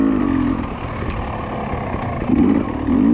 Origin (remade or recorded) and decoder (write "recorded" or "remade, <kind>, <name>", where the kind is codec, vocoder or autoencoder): recorded